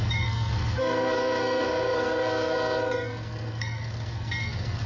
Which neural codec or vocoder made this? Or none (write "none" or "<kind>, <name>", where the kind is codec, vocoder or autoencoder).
codec, SNAC